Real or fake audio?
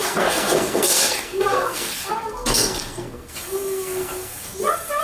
fake